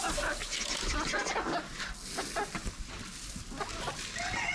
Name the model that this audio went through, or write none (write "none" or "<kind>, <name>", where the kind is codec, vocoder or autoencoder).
none